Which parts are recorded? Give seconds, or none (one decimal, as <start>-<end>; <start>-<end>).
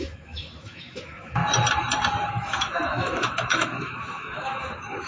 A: 1.4-2.3